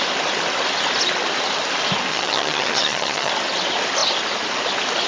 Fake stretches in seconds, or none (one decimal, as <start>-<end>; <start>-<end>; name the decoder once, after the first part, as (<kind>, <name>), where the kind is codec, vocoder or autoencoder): 2.1-3.3 (vocoder, HiFi-GAN)